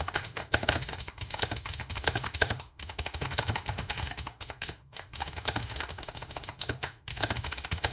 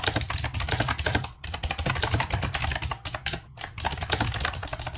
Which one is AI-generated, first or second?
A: first